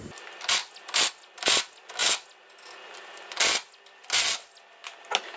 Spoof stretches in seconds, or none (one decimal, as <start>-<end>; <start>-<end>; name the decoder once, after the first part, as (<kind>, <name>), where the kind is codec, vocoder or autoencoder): none